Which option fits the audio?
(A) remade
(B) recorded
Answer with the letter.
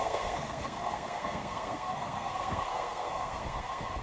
A